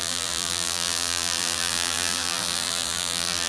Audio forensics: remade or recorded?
remade